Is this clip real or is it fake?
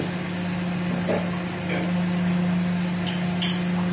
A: real